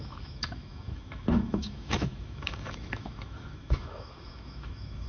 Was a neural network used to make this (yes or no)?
yes